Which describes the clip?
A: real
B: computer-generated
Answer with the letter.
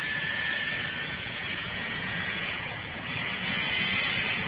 B